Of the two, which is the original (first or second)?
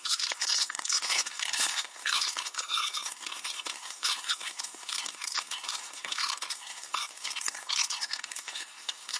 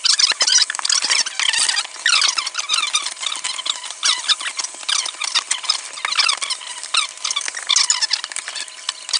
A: second